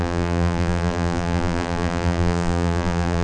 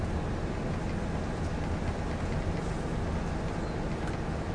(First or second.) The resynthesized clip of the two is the first